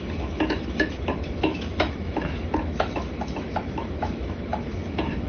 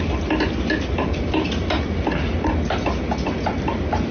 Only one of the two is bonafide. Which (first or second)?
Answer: second